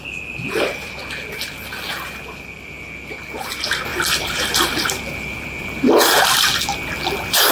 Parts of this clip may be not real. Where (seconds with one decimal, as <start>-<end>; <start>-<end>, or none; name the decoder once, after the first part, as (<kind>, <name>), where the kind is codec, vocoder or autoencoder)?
0.0-1.0 (vocoder, BigVGAN v2); 1.9-7.5